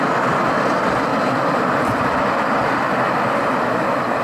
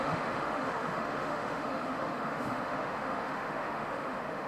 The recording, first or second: first